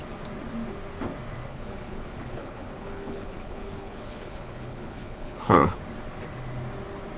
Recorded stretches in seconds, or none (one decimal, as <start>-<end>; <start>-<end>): 0.0-1.5; 5.8-7.2